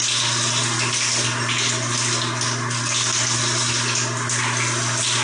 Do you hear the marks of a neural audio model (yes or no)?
no